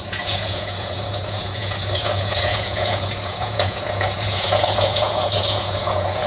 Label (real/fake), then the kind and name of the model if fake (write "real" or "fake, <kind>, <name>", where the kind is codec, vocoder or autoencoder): fake, vocoder, Vocos